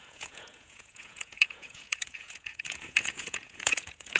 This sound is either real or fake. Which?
fake